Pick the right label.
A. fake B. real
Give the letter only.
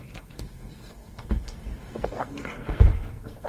A